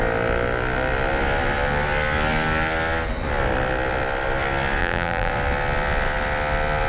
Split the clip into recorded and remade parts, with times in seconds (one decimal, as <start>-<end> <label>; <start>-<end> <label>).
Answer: 0.0-4.8 recorded; 4.8-5.3 remade; 5.3-6.9 recorded